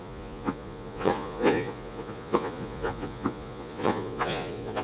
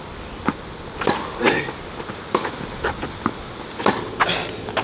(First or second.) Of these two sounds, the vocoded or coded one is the first